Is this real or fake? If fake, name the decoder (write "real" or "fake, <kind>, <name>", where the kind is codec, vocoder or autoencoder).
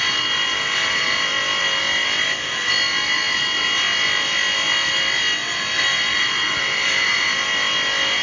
real